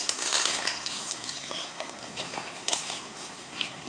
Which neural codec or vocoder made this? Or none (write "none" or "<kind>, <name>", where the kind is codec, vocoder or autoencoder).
codec, SNAC